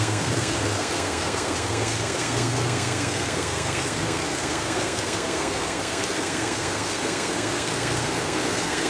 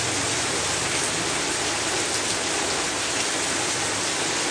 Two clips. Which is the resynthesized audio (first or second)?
first